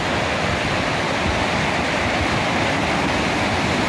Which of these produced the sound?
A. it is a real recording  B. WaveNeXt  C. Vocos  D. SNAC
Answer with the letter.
A